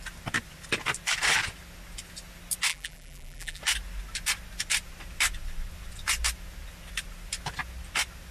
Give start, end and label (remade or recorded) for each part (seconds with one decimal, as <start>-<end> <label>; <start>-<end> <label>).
0.0-2.7 recorded; 2.7-3.6 remade; 3.6-8.3 recorded